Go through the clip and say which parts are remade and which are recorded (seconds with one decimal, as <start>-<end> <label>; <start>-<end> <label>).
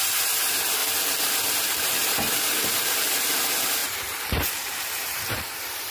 0.0-0.8 remade; 0.8-1.5 recorded; 1.5-5.9 remade